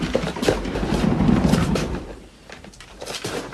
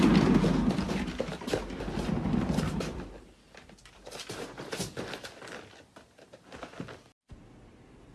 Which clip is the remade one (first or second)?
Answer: first